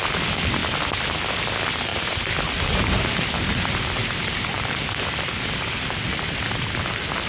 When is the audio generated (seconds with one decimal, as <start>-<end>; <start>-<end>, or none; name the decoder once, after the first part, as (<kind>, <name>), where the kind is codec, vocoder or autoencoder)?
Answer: 1.9-2.4 (vocoder, BigVGAN v2); 4.0-4.8